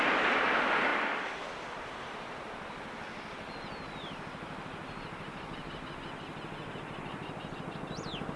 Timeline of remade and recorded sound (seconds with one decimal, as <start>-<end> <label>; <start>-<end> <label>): 0.0-8.4 recorded